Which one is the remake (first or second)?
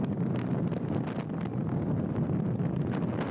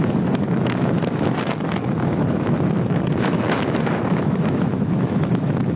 second